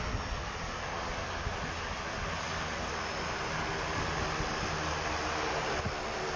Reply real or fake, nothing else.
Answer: real